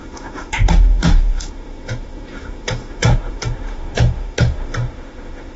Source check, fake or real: fake